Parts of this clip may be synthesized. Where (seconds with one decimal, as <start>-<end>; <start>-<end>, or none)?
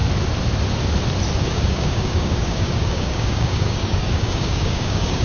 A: 1.4-5.2